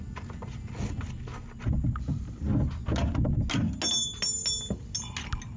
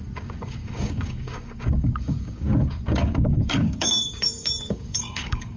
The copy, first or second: second